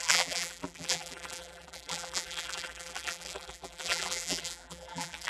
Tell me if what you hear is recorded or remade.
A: remade